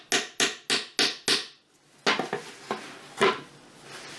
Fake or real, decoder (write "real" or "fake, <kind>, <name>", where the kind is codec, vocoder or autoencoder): real